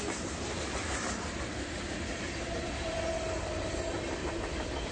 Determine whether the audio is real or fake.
real